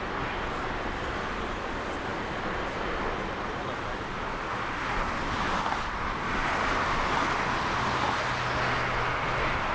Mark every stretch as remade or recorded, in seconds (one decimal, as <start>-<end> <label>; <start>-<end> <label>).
0.0-9.7 recorded